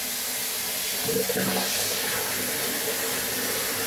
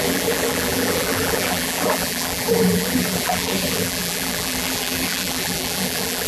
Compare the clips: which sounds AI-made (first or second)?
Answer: second